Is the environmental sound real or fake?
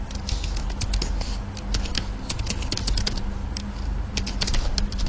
real